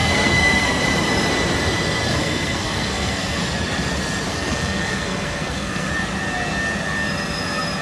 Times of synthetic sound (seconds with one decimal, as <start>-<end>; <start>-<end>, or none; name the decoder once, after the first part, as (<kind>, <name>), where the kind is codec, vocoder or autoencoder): 0.0-0.8 (codec, SNAC); 2.1-3.4; 4.3-5.9